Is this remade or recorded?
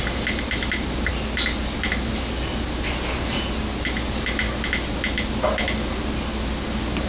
recorded